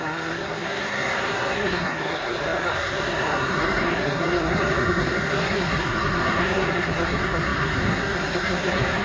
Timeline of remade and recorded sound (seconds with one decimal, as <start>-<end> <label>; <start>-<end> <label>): 0.0-9.0 remade